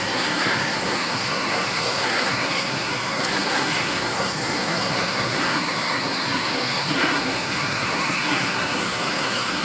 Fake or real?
fake